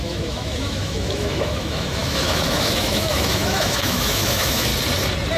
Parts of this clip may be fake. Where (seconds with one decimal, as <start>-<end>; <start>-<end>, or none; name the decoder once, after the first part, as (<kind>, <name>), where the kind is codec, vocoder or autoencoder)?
0.0-4.7 (autoencoder, DAC-VAE)

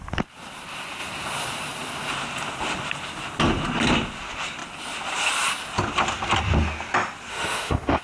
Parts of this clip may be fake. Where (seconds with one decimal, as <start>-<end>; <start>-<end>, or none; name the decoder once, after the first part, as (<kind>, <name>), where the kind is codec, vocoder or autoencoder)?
7.3-8.0 (autoencoder, DAC-VAE)

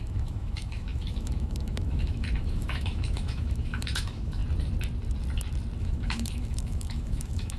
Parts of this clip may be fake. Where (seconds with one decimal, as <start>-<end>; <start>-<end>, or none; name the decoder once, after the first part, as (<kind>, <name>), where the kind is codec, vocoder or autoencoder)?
0.0-4.4 (autoencoder, DAC-VAE); 5.8-7.6